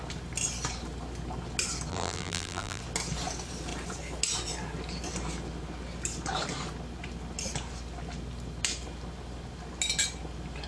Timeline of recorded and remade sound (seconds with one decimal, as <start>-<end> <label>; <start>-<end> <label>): 0.0-1.9 recorded; 1.9-2.8 remade; 2.8-10.7 recorded

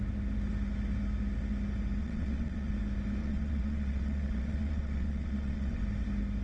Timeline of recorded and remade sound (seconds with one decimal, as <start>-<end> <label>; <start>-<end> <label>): 0.0-2.0 recorded; 2.0-2.7 remade; 2.7-3.2 recorded; 3.2-5.8 remade; 5.8-6.4 recorded

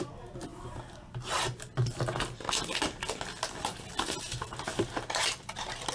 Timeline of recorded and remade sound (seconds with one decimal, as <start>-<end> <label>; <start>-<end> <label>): 0.0-4.7 recorded; 4.7-5.9 remade

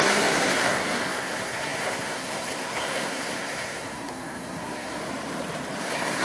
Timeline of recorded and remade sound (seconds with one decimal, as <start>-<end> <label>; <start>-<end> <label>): 0.0-5.0 remade; 5.0-5.8 recorded; 5.8-6.2 remade

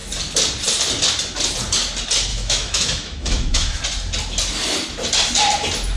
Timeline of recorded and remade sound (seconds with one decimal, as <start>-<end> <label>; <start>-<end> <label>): 0.0-2.3 recorded; 2.3-3.8 remade; 3.8-6.0 recorded